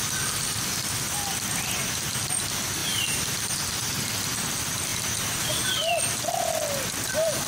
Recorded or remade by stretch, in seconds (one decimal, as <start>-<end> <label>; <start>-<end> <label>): 0.0-7.5 recorded